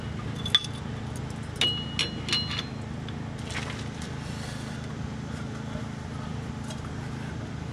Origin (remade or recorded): recorded